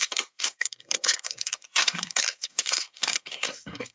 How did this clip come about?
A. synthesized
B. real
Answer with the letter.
A